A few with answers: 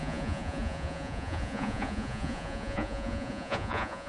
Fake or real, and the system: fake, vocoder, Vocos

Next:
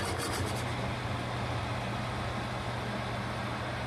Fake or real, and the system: real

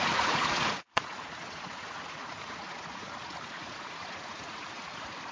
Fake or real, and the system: fake, vocoder, Vocos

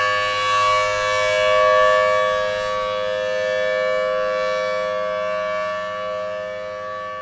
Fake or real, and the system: real